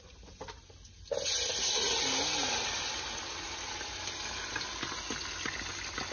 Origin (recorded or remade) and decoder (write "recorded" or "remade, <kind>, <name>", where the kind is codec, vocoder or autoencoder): recorded